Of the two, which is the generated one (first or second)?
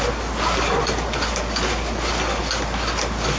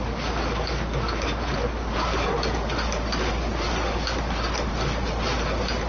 second